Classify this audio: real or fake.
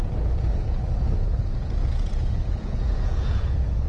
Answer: fake